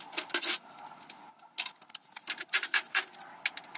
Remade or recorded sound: recorded